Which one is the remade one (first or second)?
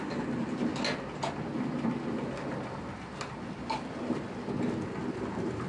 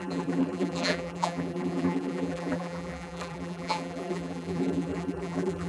second